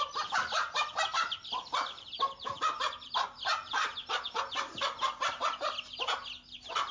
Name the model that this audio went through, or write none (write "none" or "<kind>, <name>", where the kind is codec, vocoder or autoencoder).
none